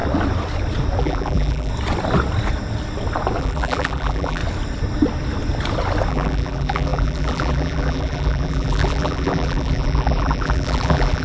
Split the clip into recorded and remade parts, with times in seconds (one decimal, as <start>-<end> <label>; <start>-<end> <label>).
0.0-1.0 recorded; 1.0-1.7 remade; 1.7-3.4 recorded; 3.4-4.4 remade; 4.4-6.1 recorded; 6.1-11.2 remade